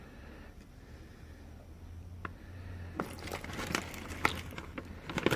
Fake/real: real